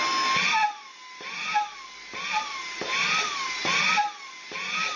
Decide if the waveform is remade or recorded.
recorded